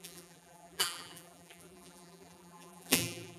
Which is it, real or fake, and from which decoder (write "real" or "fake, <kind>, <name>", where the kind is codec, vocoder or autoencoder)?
fake, vocoder, BigVGAN v2